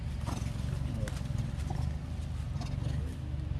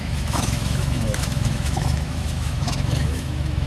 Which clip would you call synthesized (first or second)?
second